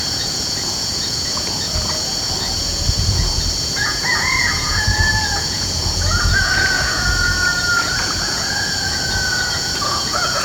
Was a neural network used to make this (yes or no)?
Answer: yes